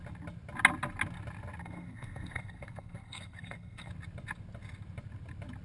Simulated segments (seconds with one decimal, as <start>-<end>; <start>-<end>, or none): 1.6-3.9